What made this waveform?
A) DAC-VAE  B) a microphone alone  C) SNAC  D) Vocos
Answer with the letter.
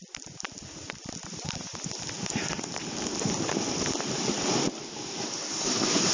B